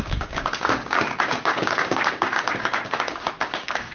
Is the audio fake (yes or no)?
yes